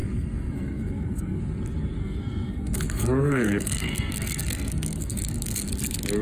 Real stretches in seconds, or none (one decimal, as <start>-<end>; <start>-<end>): 1.4-2.0; 5.7-6.2

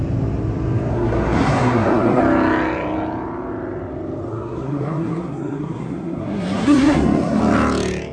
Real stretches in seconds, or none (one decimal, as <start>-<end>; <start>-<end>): 0.0-0.9; 2.2-4.3; 7.4-8.1

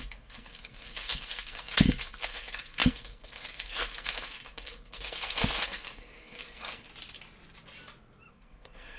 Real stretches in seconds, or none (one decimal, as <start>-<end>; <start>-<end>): 6.9-8.3

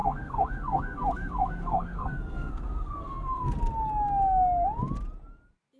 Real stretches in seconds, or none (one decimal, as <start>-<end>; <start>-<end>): 3.5-5.8

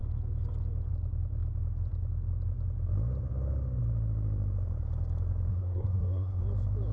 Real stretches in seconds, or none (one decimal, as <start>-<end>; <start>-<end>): 0.0-5.5; 6.4-6.9